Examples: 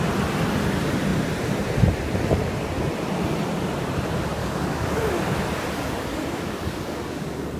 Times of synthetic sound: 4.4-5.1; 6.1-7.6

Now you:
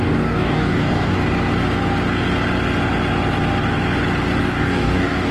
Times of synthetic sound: 0.0-1.2; 4.4-5.3

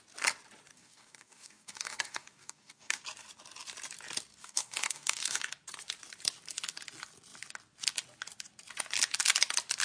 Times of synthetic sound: 0.7-3.0; 4.4-5.5

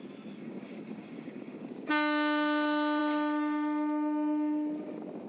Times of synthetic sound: 0.4-1.9